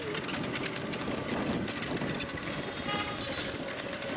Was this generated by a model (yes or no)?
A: no